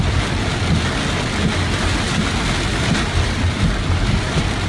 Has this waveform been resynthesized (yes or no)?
no